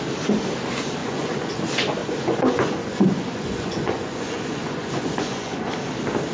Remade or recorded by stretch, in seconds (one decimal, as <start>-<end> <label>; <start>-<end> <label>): 0.0-1.0 recorded; 1.0-1.6 remade; 1.6-2.0 recorded; 2.0-5.8 remade; 5.8-6.3 recorded